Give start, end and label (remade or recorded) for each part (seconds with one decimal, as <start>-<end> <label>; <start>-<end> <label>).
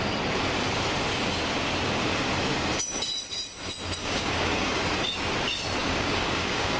0.0-4.0 recorded; 4.0-4.8 remade; 4.8-5.8 recorded; 5.8-6.8 remade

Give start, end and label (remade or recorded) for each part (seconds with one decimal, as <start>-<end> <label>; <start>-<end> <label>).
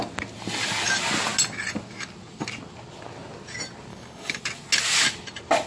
0.0-3.9 recorded; 3.9-4.4 remade; 4.4-5.7 recorded